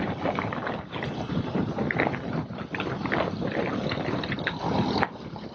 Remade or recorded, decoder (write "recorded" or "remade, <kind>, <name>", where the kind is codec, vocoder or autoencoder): recorded